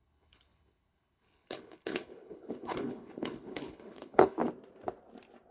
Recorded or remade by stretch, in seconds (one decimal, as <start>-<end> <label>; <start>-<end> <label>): 0.0-4.4 remade; 4.4-5.5 recorded